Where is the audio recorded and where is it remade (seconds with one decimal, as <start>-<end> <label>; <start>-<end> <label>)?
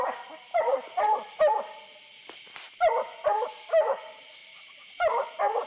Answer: 0.0-0.5 recorded; 0.5-1.4 remade; 1.4-4.4 recorded; 4.4-5.3 remade; 5.3-5.7 recorded